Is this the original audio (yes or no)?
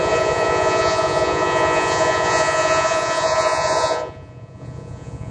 no